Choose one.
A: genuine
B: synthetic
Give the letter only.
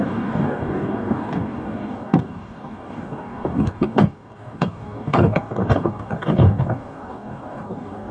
B